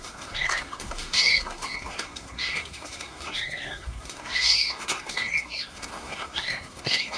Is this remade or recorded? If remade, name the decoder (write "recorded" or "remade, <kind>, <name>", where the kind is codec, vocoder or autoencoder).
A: remade, codec, SNAC